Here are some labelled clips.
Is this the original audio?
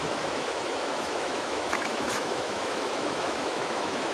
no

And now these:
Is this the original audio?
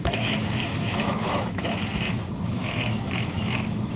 no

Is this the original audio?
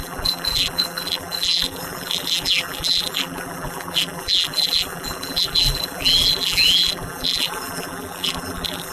no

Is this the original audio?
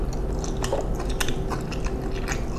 yes